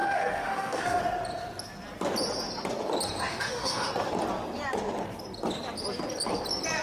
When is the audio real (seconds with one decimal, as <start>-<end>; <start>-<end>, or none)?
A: 1.0-3.3; 3.9-6.8

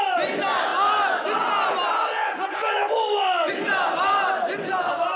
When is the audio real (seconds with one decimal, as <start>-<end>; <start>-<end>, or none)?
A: 0.0-5.2

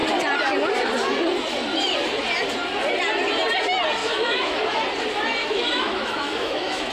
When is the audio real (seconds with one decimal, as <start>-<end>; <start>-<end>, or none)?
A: 0.0-4.0; 4.8-5.4